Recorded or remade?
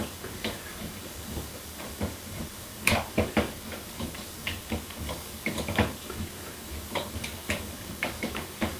remade